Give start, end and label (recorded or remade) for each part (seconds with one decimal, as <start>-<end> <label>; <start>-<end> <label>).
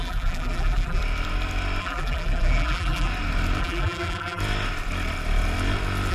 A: 0.0-1.0 remade; 1.0-1.8 recorded; 1.8-3.1 remade; 3.1-3.6 recorded; 3.6-4.4 remade; 4.4-6.1 recorded